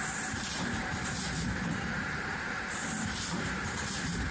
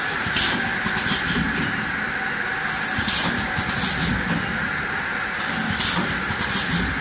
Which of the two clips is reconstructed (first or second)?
first